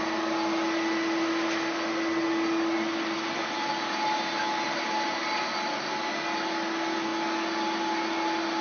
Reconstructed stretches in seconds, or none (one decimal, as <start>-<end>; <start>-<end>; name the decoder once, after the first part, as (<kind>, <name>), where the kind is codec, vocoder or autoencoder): none

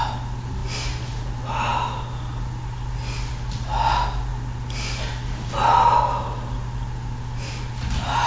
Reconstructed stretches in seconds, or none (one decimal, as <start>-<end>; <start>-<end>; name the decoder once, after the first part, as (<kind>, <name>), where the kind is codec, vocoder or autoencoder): none